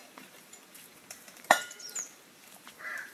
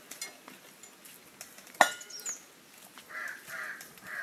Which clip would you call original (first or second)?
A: second